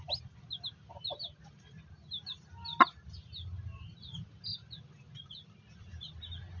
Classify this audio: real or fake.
real